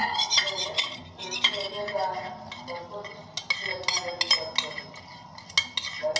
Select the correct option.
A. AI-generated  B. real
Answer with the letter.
B